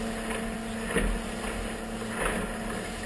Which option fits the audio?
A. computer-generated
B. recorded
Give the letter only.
B